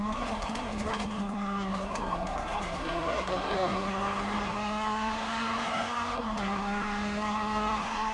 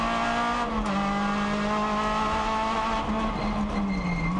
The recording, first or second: second